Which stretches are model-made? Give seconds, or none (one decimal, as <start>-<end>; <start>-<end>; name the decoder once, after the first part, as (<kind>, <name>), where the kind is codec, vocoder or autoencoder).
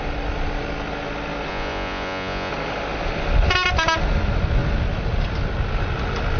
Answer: 1.5-2.5 (vocoder, Vocos)